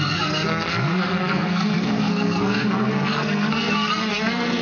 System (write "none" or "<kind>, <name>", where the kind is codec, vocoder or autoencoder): codec, SNAC